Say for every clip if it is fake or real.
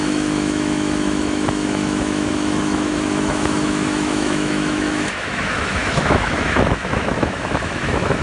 fake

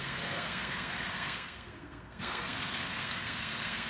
fake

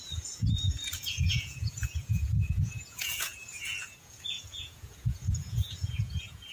fake